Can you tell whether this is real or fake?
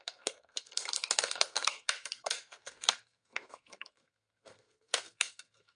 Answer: fake